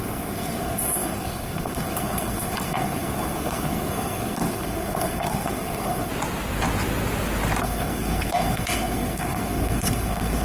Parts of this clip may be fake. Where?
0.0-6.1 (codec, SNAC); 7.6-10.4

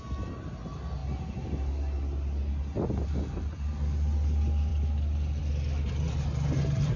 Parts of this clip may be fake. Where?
none

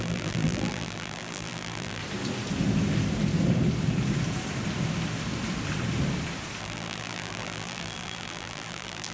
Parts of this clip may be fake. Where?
0.0-2.0 (vocoder, BigVGAN v2); 6.6-9.1

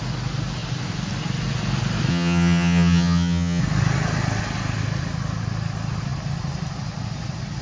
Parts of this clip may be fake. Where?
2.1-3.6 (vocoder, HiFi-GAN)

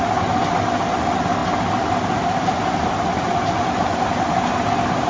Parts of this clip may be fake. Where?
1.4-4.5 (vocoder, BigVGAN v2)

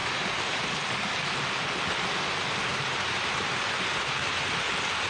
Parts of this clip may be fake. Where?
0.0-0.6 (vocoder, BigVGAN v2); 2.7-4.5